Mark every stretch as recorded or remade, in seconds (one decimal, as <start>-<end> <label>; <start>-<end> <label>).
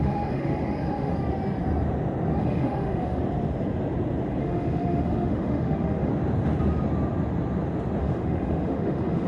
0.0-1.1 remade; 1.1-2.4 recorded; 2.4-3.2 remade; 3.2-4.4 recorded; 4.4-6.1 remade; 6.1-8.0 recorded; 8.0-9.3 remade